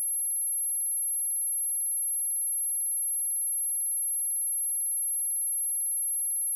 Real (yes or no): yes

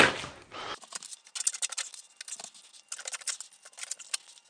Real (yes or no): yes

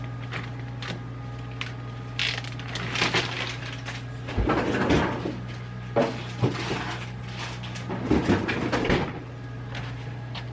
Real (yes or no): yes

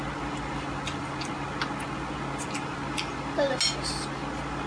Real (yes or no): yes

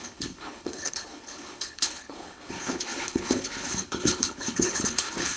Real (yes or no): no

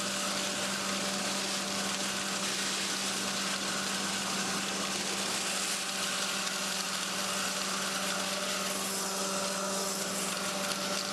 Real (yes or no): yes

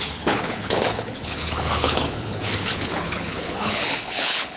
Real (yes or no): no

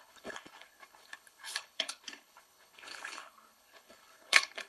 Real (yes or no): no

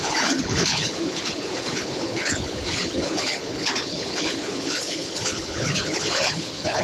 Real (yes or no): no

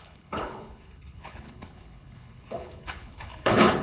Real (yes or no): no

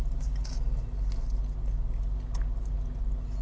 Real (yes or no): yes